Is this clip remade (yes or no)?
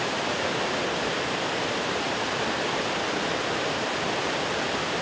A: no